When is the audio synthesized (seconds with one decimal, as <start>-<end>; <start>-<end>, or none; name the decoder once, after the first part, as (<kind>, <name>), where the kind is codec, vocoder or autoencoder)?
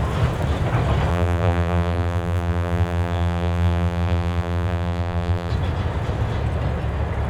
1.1-5.5 (vocoder, BigVGAN v2)